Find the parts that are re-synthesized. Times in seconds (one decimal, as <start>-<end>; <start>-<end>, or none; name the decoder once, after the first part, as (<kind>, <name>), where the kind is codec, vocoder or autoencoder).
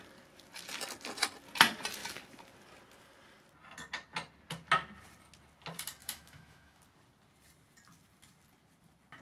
6.0-6.8 (autoencoder, DAC-VAE)